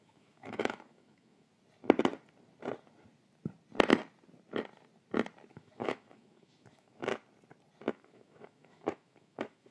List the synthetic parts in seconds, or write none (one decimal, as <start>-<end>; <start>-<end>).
0.0-1.5; 5.5-7.1; 7.9-9.7